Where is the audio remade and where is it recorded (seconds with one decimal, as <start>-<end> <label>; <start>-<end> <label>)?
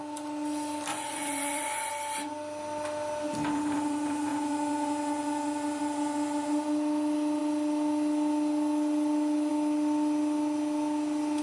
0.0-0.9 recorded; 0.9-1.9 remade; 1.9-11.4 recorded